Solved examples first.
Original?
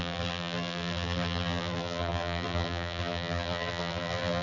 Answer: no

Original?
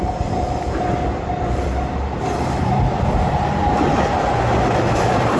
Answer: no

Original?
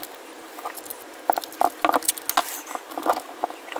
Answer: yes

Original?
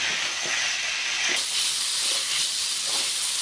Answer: yes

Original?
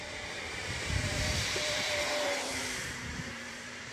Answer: no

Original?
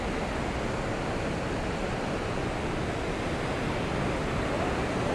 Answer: yes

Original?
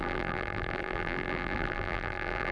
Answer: no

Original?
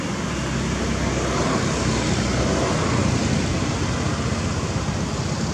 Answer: yes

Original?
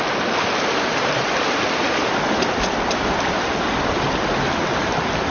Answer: yes